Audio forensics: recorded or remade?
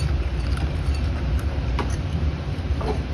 remade